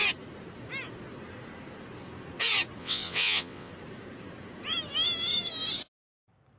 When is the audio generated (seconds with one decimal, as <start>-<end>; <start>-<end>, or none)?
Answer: 2.8-3.7